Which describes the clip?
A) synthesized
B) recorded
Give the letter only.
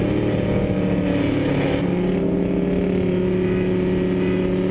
B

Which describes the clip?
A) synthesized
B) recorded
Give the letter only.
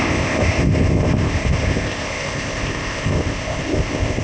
A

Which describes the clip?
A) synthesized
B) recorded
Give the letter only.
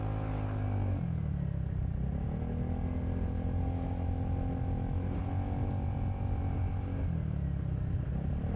B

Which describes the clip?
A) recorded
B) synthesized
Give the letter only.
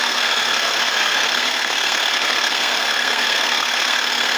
B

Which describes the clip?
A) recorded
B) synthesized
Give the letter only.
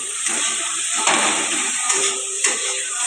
B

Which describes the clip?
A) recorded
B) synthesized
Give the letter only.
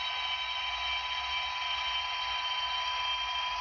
A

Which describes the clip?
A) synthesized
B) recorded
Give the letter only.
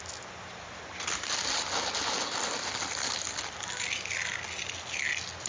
B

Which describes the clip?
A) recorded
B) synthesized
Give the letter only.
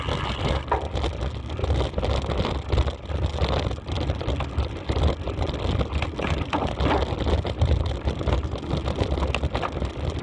A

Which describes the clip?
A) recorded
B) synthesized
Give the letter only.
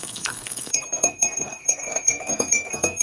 B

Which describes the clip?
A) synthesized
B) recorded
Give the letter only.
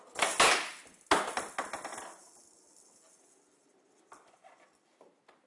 B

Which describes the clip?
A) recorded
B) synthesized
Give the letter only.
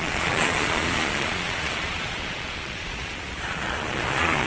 B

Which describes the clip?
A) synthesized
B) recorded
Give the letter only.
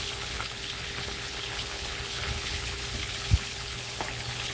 A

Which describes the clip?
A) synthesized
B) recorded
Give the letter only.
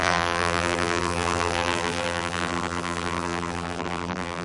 A